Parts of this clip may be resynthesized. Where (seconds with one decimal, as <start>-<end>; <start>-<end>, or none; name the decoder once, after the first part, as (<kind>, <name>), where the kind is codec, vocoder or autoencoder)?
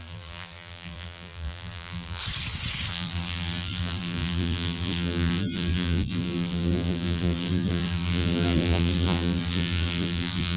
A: 0.0-2.2 (vocoder, BigVGAN v2); 2.9-10.6